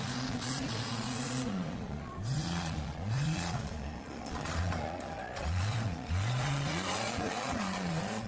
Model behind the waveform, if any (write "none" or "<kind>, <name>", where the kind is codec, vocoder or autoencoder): vocoder, Vocos